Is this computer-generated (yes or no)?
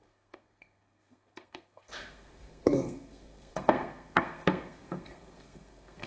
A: yes